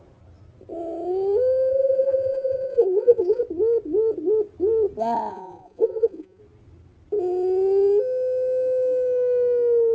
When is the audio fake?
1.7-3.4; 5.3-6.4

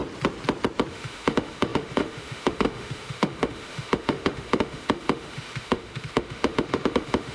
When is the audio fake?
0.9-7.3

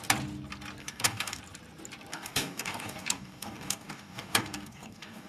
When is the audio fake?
0.8-1.4; 2.1-5.3